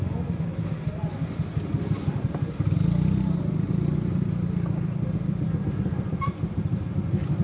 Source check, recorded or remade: recorded